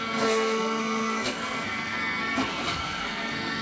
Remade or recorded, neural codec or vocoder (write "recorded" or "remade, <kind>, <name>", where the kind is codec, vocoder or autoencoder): remade, codec, SNAC